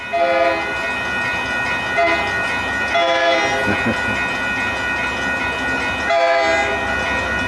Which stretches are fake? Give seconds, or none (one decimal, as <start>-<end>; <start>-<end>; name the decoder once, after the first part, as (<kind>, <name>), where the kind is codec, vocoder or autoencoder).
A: none